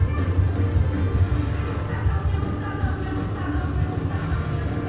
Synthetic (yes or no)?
no